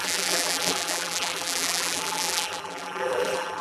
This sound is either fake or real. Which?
fake